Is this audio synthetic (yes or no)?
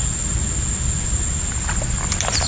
no